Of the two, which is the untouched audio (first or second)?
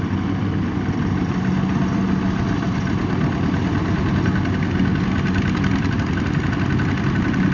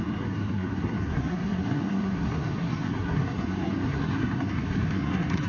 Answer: first